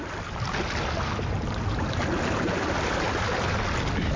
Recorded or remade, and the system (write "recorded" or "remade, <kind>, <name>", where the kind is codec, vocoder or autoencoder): recorded